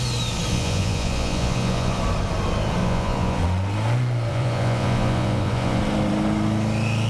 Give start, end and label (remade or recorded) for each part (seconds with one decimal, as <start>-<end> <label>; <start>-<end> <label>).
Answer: 0.0-0.5 recorded; 0.5-2.0 remade; 2.0-2.8 recorded; 2.8-3.4 remade; 3.4-4.3 recorded; 4.3-5.8 remade; 5.8-7.1 recorded